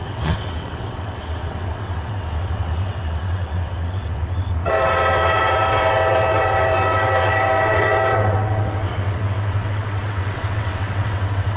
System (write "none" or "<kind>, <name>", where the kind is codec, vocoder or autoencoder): vocoder, WaveNeXt